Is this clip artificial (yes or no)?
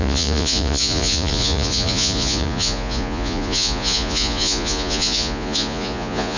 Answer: yes